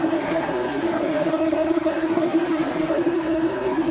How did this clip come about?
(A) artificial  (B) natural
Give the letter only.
A